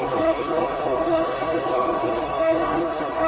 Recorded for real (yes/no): no